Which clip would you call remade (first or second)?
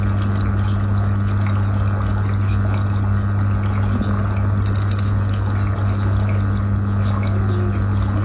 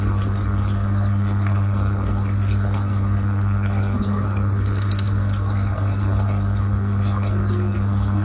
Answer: second